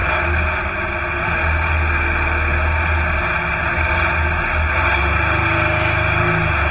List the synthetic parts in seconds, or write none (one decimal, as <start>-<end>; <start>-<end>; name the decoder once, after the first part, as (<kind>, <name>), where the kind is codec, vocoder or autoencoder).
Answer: none